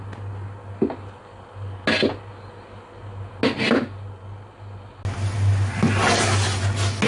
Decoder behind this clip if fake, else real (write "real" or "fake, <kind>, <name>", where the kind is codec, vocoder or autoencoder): real